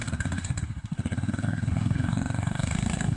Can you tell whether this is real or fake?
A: fake